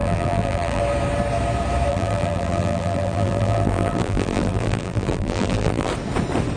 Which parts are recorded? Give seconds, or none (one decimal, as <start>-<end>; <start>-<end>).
0.8-1.9; 5.9-6.6